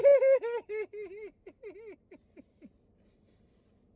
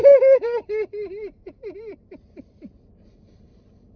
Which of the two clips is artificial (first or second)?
second